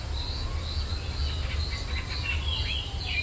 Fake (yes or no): no